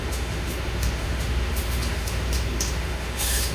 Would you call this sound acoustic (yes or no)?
no